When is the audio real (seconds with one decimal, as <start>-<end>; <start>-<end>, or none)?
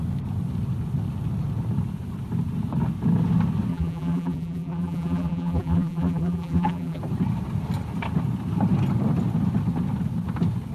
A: 0.0-3.7; 7.0-10.7